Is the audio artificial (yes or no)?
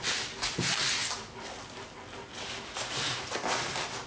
no